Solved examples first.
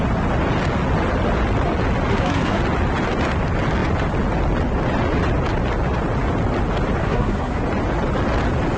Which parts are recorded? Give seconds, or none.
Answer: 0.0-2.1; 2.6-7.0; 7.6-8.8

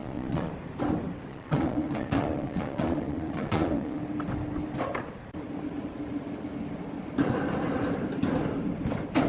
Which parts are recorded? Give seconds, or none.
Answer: 0.5-1.3; 4.0-9.3

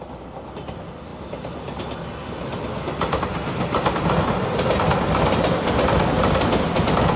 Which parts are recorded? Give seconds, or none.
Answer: 0.0-7.2